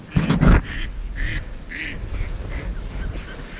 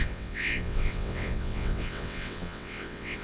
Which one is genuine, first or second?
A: first